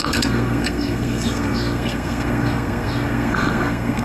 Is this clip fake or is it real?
fake